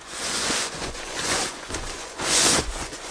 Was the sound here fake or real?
fake